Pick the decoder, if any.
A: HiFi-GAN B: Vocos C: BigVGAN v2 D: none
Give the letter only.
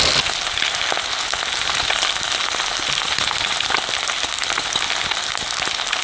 D